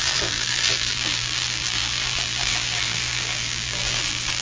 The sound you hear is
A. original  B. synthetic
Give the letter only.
B